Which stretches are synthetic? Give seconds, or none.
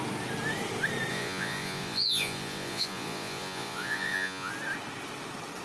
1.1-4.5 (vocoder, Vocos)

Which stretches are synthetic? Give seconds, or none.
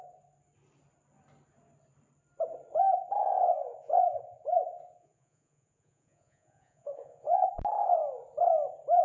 3.2-7.5 (vocoder, Vocos)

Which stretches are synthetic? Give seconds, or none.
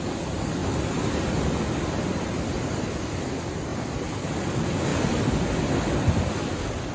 none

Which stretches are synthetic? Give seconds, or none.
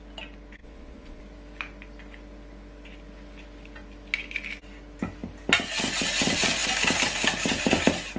0.6-1.2 (vocoder, Vocos)